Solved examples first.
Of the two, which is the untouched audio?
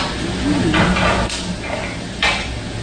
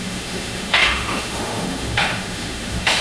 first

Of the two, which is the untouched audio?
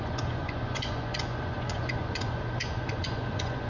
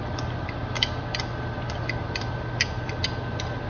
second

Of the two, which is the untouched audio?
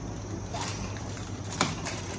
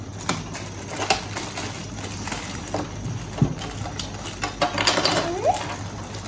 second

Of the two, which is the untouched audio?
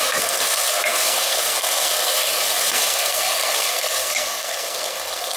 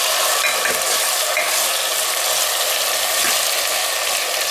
second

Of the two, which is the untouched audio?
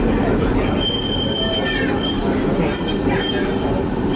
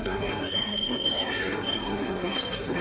first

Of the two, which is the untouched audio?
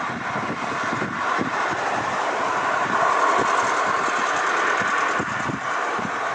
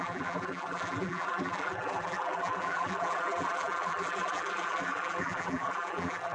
first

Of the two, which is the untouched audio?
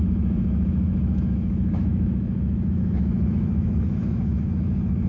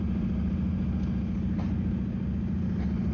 second